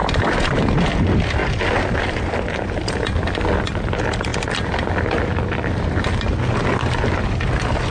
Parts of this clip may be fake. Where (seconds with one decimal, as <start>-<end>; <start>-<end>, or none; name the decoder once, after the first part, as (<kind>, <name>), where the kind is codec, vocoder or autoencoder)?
0.0-0.6 (vocoder, BigVGAN v2)